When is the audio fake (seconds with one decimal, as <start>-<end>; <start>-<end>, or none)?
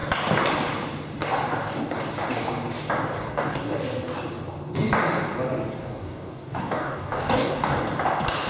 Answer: 3.2-3.8; 5.8-7.7